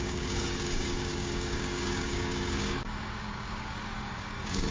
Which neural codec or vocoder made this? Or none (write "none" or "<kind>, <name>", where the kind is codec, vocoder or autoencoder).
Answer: codec, DAC